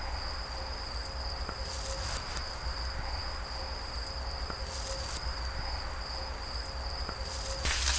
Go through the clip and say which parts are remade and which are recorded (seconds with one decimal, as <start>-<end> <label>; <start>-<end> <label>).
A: 0.0-8.0 recorded

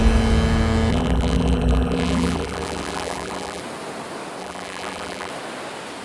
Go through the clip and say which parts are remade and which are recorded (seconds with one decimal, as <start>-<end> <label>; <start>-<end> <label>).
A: 0.0-0.9 recorded; 0.9-3.6 remade; 3.6-4.4 recorded; 4.4-5.3 remade; 5.3-6.0 recorded

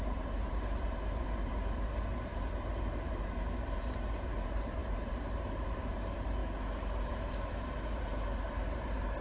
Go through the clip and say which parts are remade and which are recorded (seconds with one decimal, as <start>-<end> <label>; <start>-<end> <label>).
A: 0.0-6.4 remade; 6.4-7.1 recorded; 7.1-9.2 remade

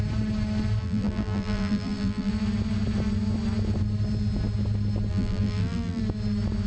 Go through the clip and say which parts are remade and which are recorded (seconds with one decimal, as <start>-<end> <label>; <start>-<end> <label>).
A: 0.0-0.8 recorded; 0.8-2.3 remade; 2.3-5.1 recorded; 5.1-6.0 remade; 6.0-6.7 recorded

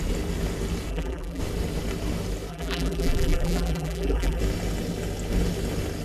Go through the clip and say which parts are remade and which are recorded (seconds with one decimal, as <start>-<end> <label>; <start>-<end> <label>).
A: 0.0-0.9 recorded; 0.9-1.4 remade; 1.4-2.5 recorded; 2.5-4.4 remade; 4.4-6.0 recorded